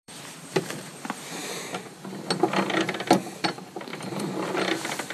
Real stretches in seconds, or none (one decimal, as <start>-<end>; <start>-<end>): 1.4-3.4